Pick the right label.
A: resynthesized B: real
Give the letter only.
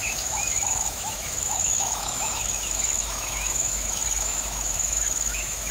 A